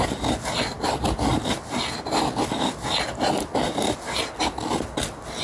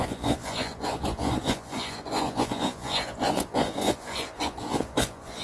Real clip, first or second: first